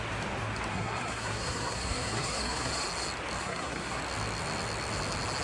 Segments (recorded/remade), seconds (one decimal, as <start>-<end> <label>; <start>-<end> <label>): 0.0-0.7 recorded; 0.7-2.7 remade; 2.7-3.4 recorded; 3.4-4.0 remade; 4.0-5.4 recorded